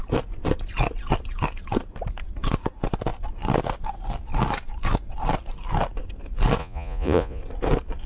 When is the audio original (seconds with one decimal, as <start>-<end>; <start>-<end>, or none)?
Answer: 0.0-6.6; 7.4-8.1